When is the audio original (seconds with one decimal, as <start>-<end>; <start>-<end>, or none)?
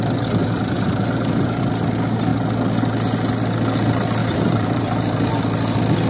0.0-0.4; 1.6-4.2; 5.3-6.1